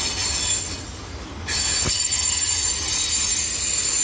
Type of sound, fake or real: real